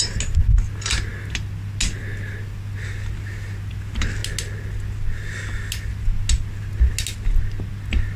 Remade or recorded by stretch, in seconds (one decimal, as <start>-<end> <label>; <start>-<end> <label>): 0.0-8.2 recorded